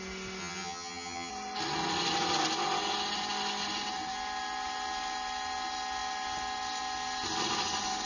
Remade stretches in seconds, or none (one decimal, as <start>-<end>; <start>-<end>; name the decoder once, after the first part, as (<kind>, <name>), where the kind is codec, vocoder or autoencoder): 0.4-1.3 (vocoder, HiFi-GAN)